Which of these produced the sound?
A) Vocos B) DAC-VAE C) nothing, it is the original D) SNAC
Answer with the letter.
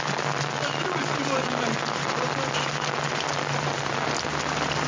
C